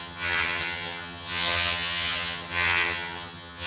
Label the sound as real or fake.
fake